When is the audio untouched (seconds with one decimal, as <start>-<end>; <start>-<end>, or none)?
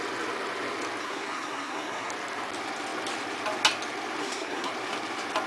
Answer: 0.0-1.0; 2.1-4.2; 4.7-5.5